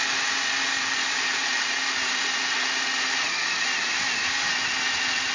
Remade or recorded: recorded